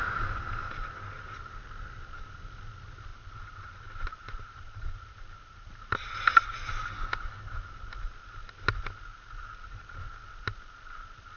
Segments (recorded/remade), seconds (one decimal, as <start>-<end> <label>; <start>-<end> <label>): 0.0-3.1 recorded; 3.1-5.7 remade; 5.7-11.4 recorded